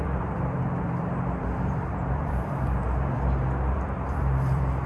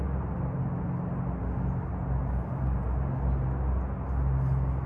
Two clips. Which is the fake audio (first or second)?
first